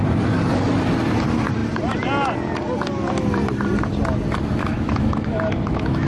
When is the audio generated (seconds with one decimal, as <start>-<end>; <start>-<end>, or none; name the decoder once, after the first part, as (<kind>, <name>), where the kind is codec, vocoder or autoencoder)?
4.6-6.1 (autoencoder, DAC-VAE)